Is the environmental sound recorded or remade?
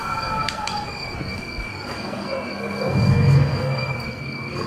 remade